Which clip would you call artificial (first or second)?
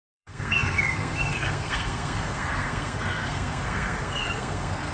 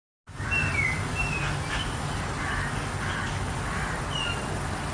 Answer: first